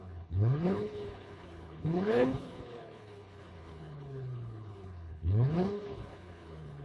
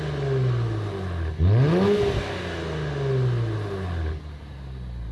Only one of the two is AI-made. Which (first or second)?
first